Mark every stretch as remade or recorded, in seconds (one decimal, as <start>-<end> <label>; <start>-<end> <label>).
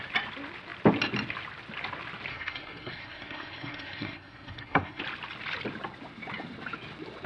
0.0-2.3 recorded; 2.3-5.0 remade; 5.0-7.3 recorded